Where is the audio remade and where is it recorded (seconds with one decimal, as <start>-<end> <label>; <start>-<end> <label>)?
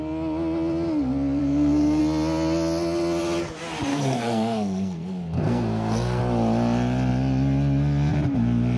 0.0-1.4 recorded; 1.4-2.0 remade; 2.0-3.9 recorded; 3.9-6.2 remade; 6.2-8.8 recorded